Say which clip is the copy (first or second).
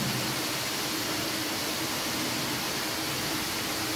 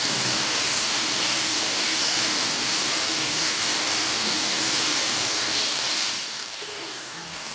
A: second